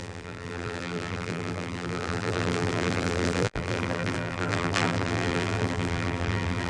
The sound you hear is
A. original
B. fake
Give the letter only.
B